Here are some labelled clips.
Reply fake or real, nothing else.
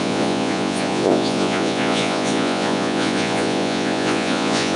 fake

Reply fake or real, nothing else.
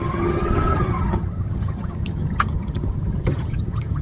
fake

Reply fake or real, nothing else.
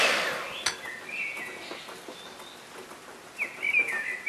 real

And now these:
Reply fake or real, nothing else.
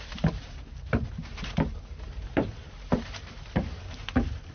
fake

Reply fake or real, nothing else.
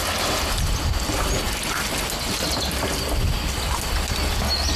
real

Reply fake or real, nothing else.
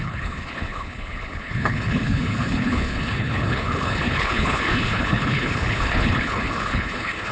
fake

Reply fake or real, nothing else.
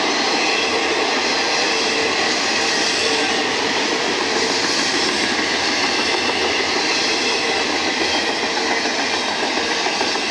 real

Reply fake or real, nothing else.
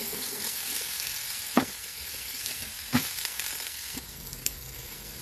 fake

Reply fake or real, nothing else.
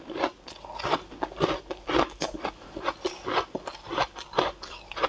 real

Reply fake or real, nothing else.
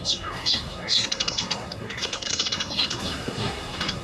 fake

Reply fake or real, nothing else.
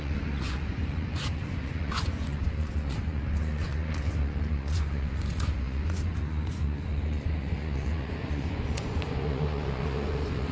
fake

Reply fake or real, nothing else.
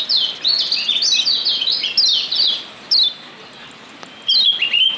real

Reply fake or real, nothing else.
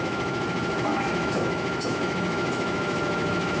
fake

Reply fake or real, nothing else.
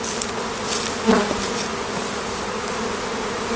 real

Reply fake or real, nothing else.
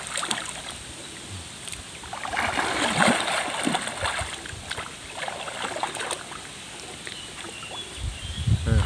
real